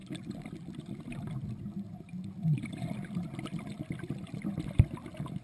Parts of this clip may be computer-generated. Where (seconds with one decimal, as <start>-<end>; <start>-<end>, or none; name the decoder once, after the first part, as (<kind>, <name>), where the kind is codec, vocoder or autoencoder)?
none